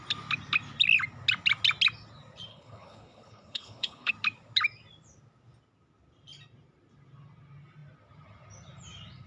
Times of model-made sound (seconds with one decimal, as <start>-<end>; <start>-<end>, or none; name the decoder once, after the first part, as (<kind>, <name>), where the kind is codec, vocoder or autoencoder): 2.5-4.1 (codec, HILCodec)